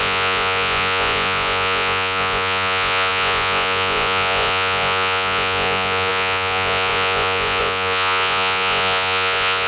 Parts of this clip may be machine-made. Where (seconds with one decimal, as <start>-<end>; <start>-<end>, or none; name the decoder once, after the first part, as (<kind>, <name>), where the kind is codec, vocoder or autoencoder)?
0.0-9.7 (vocoder, Vocos)

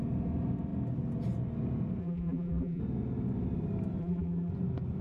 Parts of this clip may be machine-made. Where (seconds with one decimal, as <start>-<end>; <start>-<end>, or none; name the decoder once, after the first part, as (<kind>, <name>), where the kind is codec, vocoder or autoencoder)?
2.0-2.8 (vocoder, BigVGAN v2); 4.0-4.5

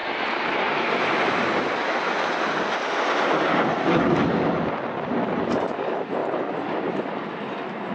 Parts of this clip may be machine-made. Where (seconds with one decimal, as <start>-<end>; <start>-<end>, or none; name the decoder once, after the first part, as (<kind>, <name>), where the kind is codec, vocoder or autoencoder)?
none

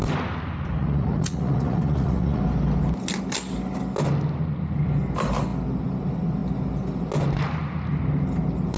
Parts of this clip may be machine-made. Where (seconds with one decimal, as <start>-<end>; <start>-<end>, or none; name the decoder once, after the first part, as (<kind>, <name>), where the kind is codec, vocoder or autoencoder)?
0.8-2.4 (vocoder, Vocos)